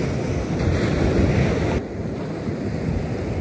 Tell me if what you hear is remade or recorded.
recorded